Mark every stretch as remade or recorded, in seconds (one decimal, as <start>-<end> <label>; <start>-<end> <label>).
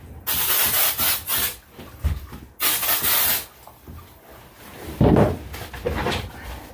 0.0-6.7 recorded